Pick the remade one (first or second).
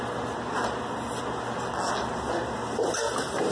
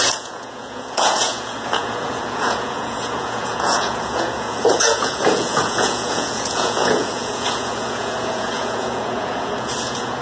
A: second